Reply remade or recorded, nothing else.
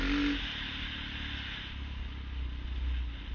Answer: recorded